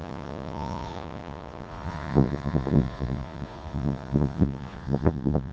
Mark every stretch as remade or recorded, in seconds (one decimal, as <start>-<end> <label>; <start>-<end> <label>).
0.0-5.5 remade